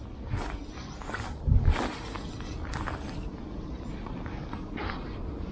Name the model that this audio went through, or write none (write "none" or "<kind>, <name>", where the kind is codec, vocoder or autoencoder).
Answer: none